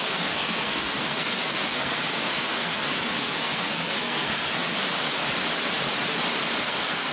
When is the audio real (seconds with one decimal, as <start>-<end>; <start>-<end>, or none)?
4.7-6.6